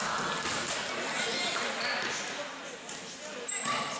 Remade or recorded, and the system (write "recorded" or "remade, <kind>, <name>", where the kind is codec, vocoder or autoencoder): recorded